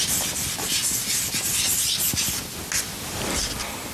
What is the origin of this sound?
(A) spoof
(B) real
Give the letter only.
B